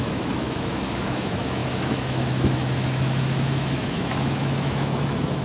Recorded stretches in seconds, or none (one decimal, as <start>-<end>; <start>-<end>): none